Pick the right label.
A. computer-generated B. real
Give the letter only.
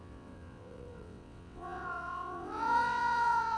A